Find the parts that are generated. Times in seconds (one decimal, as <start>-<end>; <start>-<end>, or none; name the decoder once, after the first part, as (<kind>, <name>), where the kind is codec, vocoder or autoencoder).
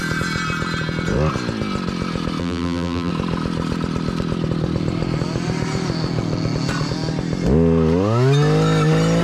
2.4-3.1 (vocoder, BigVGAN v2)